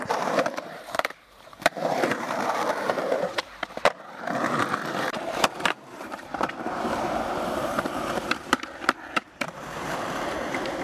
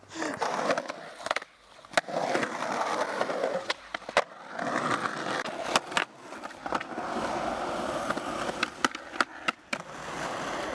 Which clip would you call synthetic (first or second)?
first